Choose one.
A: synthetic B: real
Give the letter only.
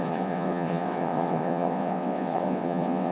A